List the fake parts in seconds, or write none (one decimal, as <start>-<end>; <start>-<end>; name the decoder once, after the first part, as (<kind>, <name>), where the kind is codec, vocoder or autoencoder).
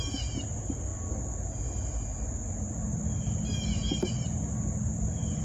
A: none